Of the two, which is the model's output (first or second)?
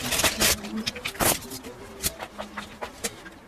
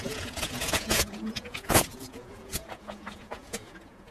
second